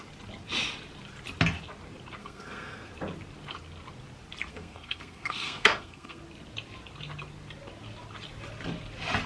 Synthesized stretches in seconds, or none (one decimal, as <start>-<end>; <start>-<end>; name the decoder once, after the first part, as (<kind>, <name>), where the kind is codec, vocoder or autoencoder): 2.2-2.9 (codec, SNAC); 4.5-6.2